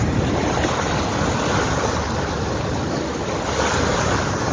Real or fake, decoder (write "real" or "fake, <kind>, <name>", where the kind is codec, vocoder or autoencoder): real